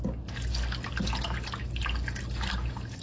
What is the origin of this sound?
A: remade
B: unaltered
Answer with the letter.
B